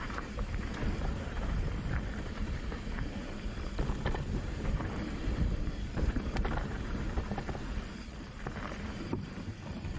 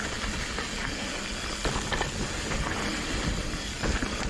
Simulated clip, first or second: first